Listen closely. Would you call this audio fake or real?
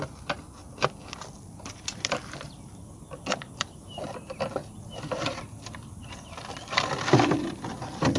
fake